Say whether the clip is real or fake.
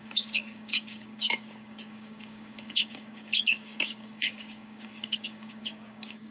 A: fake